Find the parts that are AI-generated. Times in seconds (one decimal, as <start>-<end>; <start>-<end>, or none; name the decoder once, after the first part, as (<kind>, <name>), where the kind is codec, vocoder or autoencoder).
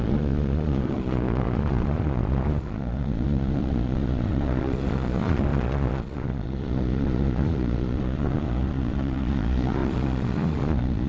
0.0-11.1 (vocoder, Vocos)